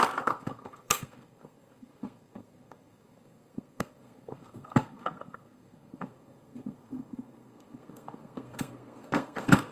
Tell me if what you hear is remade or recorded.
remade